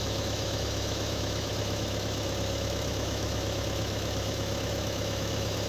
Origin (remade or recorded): remade